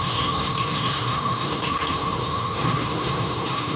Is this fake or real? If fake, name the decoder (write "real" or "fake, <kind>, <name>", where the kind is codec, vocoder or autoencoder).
fake, codec, SNAC